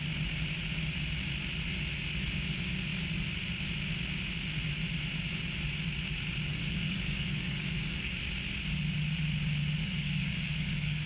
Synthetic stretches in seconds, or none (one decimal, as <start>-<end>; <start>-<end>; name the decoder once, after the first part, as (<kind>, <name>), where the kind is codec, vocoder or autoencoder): 6.5-8.1 (codec, DAC); 9.8-11.1